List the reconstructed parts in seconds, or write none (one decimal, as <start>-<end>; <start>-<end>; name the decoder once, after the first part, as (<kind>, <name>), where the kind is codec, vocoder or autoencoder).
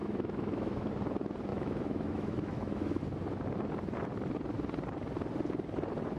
0.0-0.9 (autoencoder, DAC-VAE); 1.5-3.0